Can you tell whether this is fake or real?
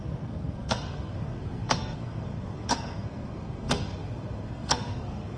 fake